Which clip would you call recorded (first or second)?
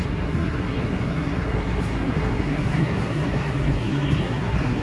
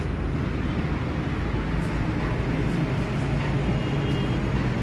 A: second